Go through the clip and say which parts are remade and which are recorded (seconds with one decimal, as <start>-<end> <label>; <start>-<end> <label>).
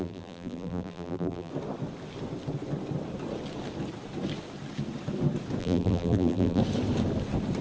0.0-1.5 remade; 1.5-5.6 recorded; 5.6-6.6 remade; 6.6-7.6 recorded